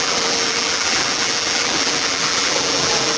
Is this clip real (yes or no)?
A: no